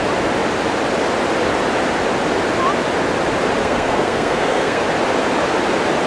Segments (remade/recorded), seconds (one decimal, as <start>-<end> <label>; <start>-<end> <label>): 0.0-3.6 recorded; 3.6-4.8 remade; 4.8-6.1 recorded